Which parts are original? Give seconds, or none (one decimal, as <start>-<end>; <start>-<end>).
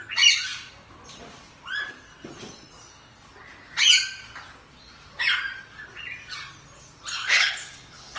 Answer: 0.0-7.2